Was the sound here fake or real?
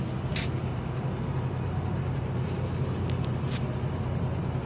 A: real